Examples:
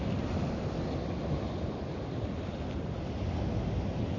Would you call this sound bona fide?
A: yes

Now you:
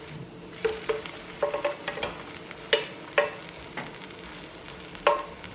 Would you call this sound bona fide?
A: yes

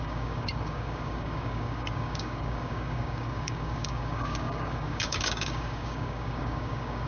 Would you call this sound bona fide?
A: no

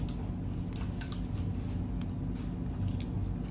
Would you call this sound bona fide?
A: yes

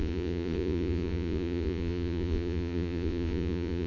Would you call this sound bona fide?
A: no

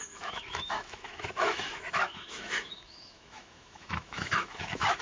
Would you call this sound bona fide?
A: no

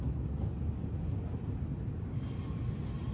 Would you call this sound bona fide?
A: yes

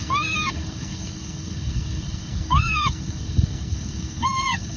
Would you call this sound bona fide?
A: no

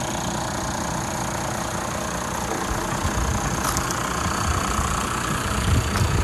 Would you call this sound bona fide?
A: yes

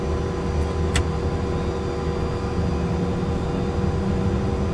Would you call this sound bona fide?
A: yes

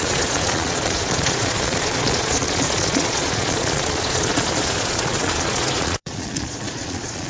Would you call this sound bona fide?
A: no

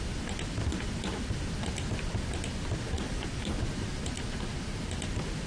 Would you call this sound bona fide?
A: yes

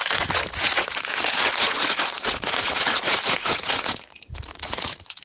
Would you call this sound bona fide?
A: no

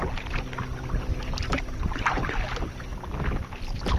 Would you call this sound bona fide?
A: yes